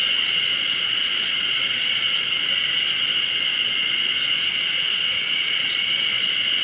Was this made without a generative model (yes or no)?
no